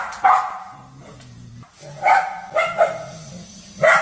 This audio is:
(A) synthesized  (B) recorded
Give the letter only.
B